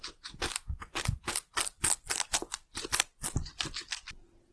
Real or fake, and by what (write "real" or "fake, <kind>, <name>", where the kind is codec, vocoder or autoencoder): real